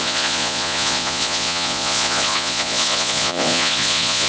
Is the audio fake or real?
fake